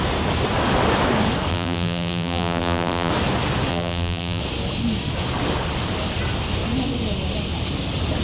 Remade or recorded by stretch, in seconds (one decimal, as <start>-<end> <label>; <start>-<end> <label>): 0.0-1.5 recorded; 1.5-3.1 remade; 3.1-3.7 recorded; 3.7-4.4 remade; 4.4-8.2 recorded